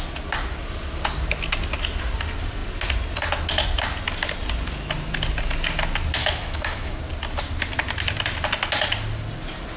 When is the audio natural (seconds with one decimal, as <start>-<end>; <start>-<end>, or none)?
0.0-6.2; 7.0-9.8

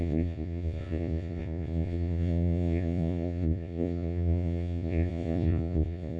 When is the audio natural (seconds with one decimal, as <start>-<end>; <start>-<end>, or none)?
none

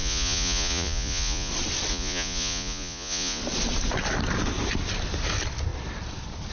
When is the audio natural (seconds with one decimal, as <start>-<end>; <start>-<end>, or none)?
1.5-1.9; 3.4-6.5

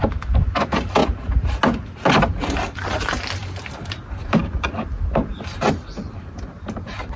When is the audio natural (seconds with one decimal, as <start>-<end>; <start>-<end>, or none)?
0.0-7.2